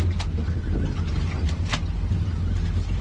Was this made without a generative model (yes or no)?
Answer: yes